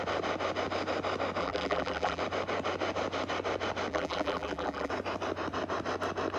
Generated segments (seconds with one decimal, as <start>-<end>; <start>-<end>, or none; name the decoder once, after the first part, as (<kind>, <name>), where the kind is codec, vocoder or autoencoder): 1.4-2.2 (vocoder, BigVGAN v2); 3.9-4.9

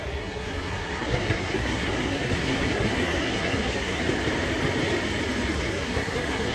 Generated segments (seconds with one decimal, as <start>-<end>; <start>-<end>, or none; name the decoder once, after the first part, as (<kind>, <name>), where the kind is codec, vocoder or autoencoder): 0.0-4.0 (codec, SNAC); 5.5-6.5

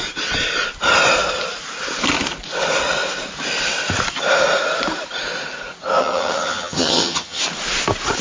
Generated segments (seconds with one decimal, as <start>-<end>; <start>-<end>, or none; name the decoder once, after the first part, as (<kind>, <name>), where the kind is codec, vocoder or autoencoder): 6.0-7.4 (vocoder, HiFi-GAN)

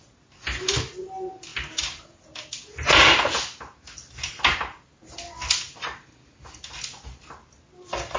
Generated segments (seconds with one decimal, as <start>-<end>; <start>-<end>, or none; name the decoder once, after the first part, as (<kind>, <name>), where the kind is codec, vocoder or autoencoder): none

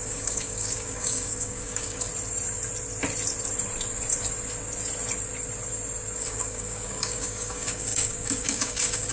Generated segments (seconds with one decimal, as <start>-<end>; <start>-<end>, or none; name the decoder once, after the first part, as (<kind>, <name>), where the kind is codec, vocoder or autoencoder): 0.0-2.1 (codec, DAC); 6.2-9.1

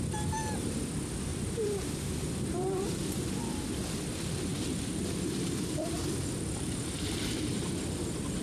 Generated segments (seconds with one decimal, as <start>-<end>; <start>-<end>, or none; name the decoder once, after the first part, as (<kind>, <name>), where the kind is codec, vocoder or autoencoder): 1.3-3.4 (vocoder, BigVGAN v2); 4.5-7.6

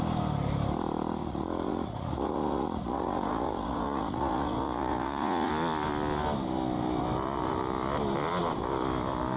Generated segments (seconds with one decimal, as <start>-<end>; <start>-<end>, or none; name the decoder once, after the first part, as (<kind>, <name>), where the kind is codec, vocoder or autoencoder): 1.2-5.5 (vocoder, Vocos)